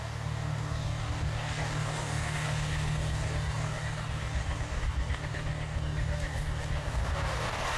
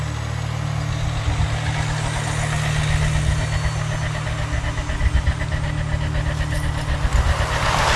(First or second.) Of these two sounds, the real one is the second